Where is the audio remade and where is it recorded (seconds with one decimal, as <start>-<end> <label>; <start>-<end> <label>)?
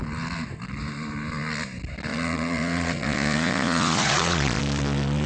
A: 0.0-2.1 recorded; 2.1-4.6 remade; 4.6-5.3 recorded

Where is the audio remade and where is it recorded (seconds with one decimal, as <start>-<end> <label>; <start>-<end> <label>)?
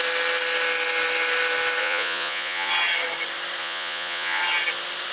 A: 0.0-1.8 recorded; 1.8-2.7 remade; 2.7-3.6 recorded; 3.6-4.4 remade; 4.4-5.1 recorded